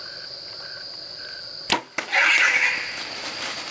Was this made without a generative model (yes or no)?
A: yes